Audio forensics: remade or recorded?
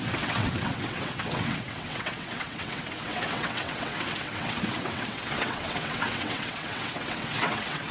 remade